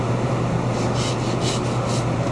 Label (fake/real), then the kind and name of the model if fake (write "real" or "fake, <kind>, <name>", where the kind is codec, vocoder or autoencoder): real